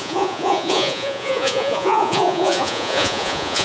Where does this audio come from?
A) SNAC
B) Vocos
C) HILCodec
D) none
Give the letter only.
B